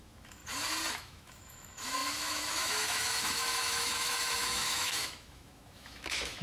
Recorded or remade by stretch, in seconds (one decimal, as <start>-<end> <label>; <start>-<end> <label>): 0.0-0.4 remade; 0.4-0.9 recorded; 0.9-6.4 remade